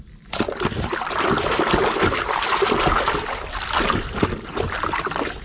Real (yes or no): yes